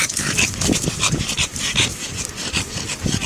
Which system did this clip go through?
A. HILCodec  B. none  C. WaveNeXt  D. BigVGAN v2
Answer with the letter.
D